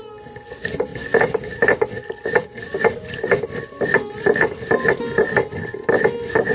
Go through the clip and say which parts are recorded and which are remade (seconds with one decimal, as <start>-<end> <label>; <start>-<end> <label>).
0.0-6.5 recorded